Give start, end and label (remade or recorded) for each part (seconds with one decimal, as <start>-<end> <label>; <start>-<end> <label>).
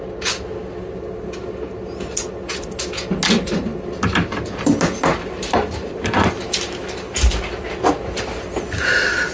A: 0.0-5.1 recorded; 5.1-6.3 remade; 6.3-9.3 recorded